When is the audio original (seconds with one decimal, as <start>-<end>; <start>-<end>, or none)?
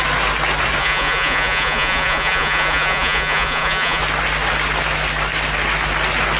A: 0.0-0.8; 4.0-6.4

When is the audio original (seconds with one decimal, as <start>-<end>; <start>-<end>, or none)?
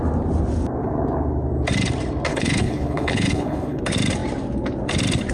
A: 0.0-2.3; 3.8-5.3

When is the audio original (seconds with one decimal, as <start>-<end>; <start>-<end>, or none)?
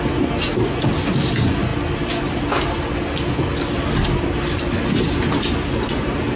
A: 0.0-6.4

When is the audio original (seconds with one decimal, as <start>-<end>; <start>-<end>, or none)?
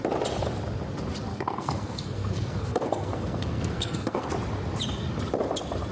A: 0.0-1.3; 4.3-5.9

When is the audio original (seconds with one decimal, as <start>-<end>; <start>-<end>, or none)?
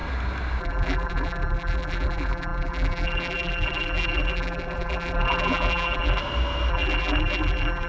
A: 0.0-0.6; 6.2-6.7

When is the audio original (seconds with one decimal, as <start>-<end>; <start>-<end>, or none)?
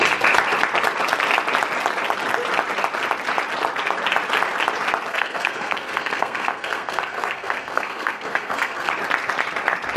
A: 0.0-5.1; 8.9-10.0